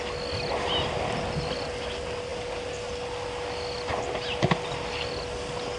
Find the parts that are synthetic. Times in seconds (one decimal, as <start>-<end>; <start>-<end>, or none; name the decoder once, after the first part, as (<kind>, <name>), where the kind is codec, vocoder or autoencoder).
none